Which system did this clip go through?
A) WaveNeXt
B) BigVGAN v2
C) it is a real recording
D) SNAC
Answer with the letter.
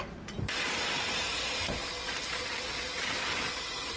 C